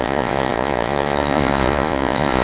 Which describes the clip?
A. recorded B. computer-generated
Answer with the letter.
B